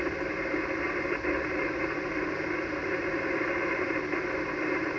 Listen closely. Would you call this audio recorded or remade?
recorded